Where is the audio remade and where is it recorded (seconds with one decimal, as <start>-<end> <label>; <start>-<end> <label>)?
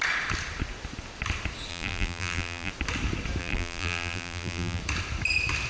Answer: 0.0-1.7 recorded; 1.7-2.7 remade; 2.7-3.4 recorded; 3.4-4.8 remade; 4.8-5.7 recorded